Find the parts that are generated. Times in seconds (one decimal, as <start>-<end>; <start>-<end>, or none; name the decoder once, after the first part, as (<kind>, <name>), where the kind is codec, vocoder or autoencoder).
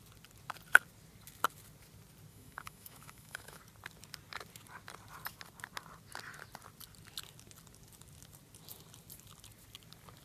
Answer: 2.3-3.6 (autoencoder, DAC-VAE)